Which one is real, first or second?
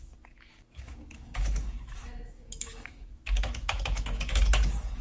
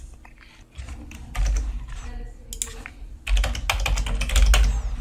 second